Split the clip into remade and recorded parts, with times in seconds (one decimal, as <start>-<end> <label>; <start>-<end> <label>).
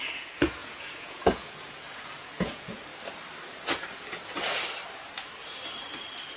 0.0-2.9 remade; 2.9-6.4 recorded